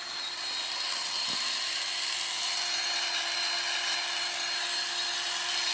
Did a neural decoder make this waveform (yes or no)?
no